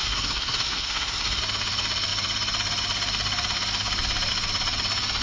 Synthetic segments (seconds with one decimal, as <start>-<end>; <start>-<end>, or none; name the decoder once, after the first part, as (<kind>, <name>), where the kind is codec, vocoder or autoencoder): 0.0-1.4 (codec, SNAC)